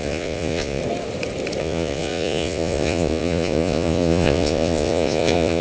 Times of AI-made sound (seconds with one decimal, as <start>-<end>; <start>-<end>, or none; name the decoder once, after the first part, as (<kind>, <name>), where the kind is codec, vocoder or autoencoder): 0.0-0.8 (vocoder, Vocos); 1.6-5.6